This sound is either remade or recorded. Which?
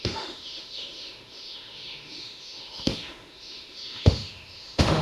remade